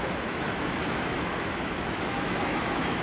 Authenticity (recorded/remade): remade